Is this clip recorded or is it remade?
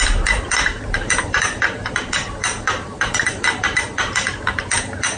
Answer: remade